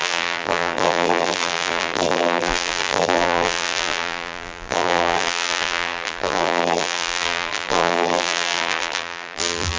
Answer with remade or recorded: remade